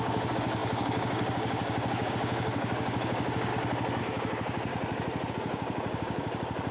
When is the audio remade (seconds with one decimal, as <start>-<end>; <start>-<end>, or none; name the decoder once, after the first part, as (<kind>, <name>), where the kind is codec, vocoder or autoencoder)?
0.0-3.5 (codec, DAC); 4.0-4.7; 5.3-6.7